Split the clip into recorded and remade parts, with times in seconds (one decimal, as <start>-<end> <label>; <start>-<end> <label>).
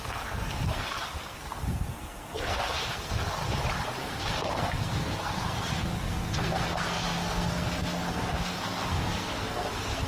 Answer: 0.0-3.4 remade; 3.4-4.0 recorded; 4.0-10.1 remade